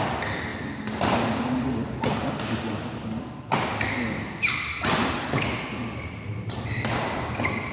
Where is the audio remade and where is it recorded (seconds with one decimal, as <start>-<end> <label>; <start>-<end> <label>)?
0.0-7.7 recorded